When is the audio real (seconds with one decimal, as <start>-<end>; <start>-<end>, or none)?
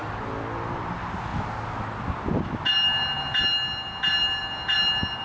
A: 0.0-5.2